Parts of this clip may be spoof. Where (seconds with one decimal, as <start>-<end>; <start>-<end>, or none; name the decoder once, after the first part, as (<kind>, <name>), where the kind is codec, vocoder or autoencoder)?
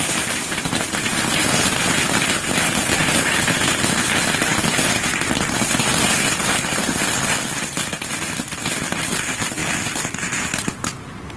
1.1-1.7 (vocoder, BigVGAN v2); 4.5-7.2